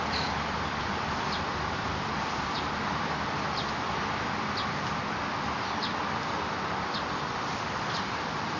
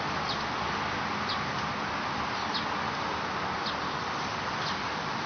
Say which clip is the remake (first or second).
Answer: first